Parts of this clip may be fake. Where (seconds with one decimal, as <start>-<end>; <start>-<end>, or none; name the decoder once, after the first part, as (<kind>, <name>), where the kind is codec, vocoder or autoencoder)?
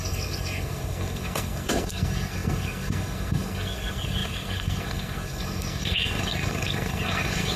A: 0.0-7.6 (codec, SNAC)